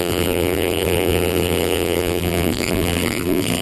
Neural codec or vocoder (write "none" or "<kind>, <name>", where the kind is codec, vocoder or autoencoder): vocoder, BigVGAN v2